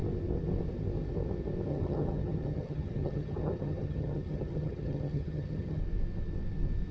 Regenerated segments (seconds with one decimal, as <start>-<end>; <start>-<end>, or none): 1.7-5.8